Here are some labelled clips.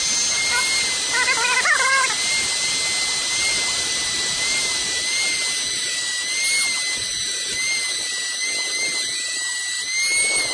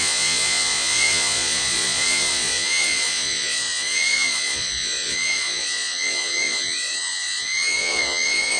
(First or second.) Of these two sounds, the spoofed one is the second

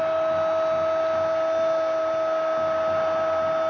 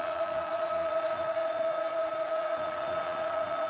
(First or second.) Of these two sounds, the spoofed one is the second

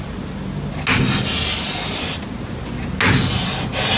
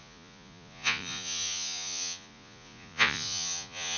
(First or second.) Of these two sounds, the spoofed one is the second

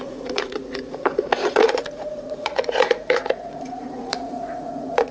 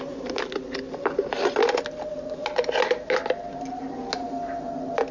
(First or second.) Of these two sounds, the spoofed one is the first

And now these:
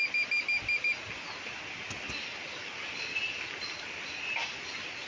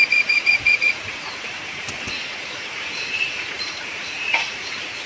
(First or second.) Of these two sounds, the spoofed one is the second